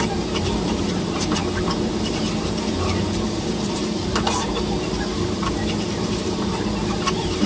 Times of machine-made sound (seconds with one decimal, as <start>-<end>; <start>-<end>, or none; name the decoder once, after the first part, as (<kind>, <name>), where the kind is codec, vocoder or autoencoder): 0.0-7.5 (vocoder, BigVGAN v2)